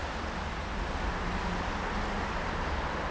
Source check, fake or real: real